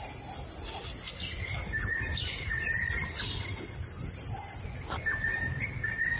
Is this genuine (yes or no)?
yes